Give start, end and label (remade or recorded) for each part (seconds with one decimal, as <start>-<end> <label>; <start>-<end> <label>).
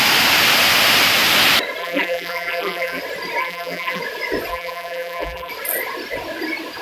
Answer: 0.0-1.8 recorded; 1.8-3.0 remade; 3.0-3.4 recorded; 3.4-4.0 remade; 4.0-4.5 recorded; 4.5-5.5 remade; 5.5-6.8 recorded